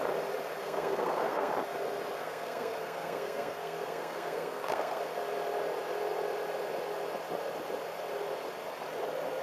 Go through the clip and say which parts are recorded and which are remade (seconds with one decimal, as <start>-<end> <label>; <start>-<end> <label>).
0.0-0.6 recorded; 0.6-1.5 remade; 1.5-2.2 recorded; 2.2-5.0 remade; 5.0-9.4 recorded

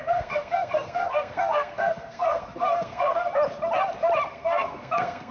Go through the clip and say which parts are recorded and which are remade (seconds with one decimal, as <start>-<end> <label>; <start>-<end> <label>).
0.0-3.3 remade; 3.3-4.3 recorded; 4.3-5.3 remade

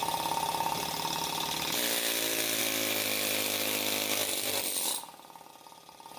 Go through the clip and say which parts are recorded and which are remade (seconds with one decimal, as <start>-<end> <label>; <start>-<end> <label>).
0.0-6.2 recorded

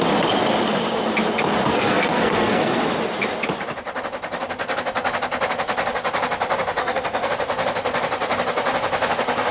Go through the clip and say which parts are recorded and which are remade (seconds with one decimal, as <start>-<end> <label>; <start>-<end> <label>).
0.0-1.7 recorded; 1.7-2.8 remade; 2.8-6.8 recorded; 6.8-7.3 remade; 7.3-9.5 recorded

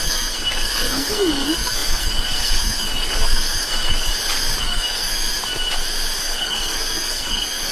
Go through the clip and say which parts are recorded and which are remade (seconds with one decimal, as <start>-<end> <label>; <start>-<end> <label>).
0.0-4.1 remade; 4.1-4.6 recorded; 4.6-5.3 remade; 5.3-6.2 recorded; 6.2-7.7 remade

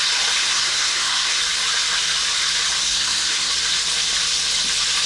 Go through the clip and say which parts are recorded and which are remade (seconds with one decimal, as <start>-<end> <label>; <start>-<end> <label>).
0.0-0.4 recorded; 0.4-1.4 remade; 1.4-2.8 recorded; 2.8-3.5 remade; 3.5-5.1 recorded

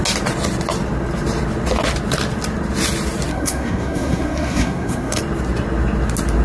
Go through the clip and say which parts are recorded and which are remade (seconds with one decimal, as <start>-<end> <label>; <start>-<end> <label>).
0.0-3.3 recorded; 3.3-5.2 remade; 5.2-6.4 recorded